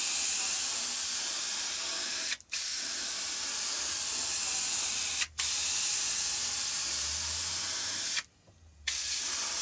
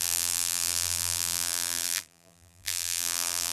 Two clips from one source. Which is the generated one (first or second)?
second